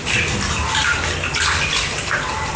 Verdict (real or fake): real